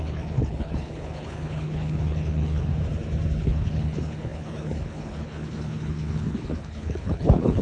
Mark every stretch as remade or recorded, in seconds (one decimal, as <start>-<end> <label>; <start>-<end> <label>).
0.0-2.7 remade; 2.7-3.4 recorded; 3.4-7.6 remade